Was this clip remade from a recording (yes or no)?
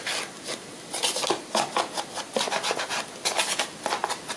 no